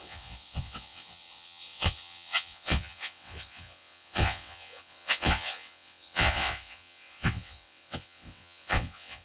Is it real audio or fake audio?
fake